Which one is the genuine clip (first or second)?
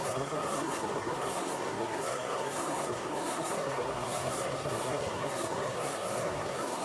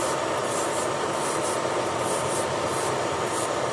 second